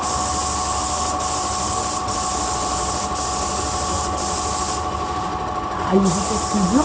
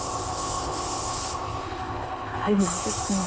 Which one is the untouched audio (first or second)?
first